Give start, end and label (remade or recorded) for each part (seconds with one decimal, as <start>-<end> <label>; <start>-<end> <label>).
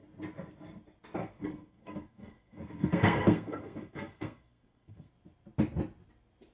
0.0-1.2 recorded; 1.2-5.1 remade; 5.1-6.5 recorded